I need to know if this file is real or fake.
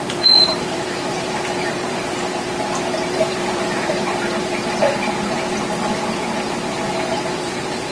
fake